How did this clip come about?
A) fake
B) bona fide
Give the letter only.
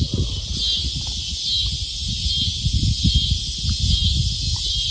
B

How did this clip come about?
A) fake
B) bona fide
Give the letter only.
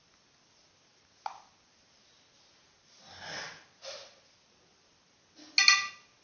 B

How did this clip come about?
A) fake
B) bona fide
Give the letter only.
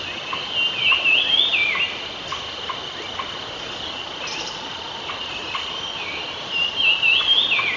B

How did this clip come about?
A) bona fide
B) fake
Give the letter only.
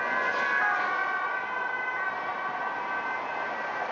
A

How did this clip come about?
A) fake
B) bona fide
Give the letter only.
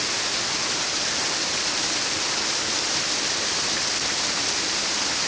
B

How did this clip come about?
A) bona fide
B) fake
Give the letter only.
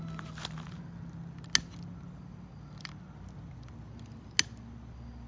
A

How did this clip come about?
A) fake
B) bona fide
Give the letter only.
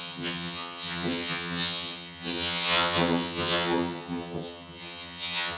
A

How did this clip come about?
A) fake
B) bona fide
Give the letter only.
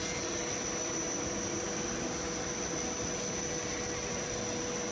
B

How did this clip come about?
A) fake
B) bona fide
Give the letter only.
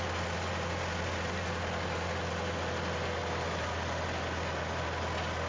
B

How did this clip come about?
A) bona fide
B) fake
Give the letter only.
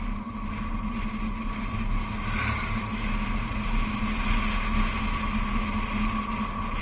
A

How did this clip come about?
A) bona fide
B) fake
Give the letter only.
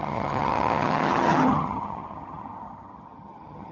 B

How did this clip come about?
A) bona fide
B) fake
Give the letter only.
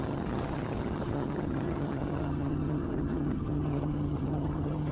B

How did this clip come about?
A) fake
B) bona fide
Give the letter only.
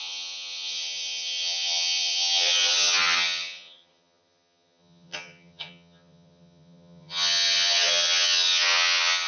A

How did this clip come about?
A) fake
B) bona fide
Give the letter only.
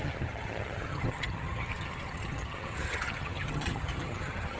A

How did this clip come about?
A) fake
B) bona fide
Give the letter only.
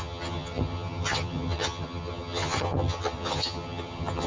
A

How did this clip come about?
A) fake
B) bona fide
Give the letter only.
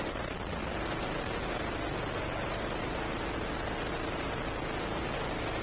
B